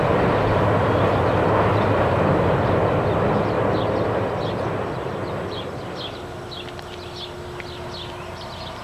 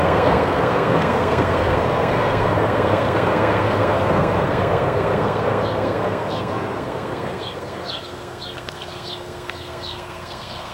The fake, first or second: second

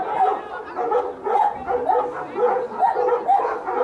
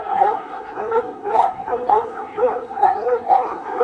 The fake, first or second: second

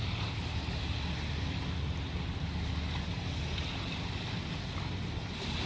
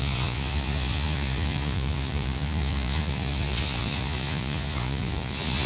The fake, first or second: second